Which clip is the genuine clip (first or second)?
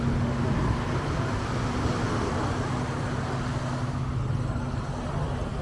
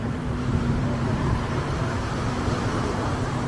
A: first